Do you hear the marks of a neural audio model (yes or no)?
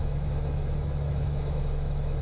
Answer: yes